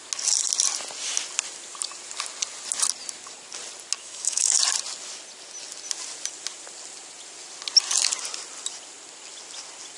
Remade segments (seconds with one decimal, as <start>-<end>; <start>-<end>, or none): 4.0-4.6

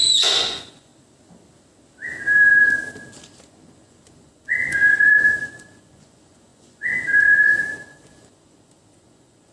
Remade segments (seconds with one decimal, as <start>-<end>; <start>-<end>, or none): 0.0-0.9; 3.5-9.5